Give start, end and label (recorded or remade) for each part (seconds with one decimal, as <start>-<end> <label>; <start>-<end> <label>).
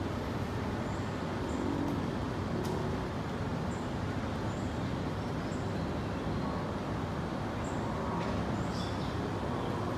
0.0-10.0 recorded